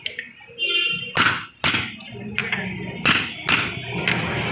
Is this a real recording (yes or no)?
yes